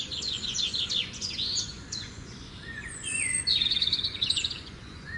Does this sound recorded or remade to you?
remade